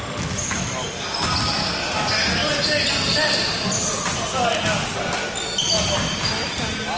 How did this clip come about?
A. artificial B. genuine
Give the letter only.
B